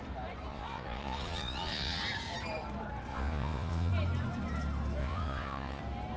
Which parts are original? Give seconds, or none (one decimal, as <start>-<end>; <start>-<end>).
0.0-0.5; 2.0-3.1; 3.9-5.0; 5.8-6.2